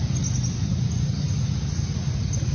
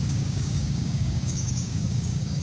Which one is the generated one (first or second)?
second